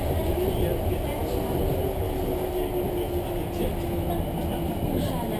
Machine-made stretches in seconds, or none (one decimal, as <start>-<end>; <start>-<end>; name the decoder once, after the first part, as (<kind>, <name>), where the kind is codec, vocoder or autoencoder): none